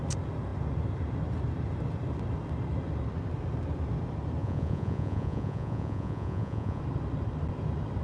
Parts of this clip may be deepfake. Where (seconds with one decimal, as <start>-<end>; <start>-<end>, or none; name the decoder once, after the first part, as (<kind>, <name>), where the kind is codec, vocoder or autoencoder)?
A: 4.4-6.8 (vocoder, Vocos)